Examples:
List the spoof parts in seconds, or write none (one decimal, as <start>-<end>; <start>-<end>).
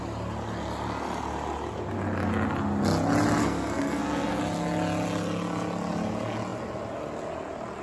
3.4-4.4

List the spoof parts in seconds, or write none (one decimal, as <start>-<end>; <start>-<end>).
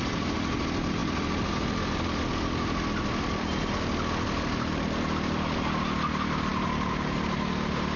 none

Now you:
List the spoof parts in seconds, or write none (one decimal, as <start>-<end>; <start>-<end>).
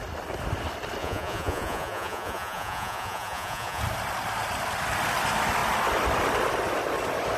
1.0-3.8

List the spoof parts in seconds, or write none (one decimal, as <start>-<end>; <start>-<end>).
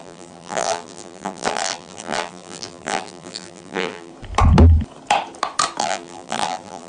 0.0-4.1; 5.8-6.9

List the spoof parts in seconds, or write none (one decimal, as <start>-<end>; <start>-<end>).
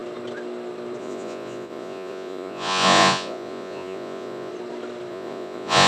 1.0-4.5; 5.1-5.9